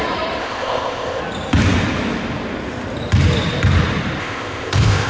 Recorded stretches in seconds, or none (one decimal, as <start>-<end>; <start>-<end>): 0.0-0.4; 1.2-4.2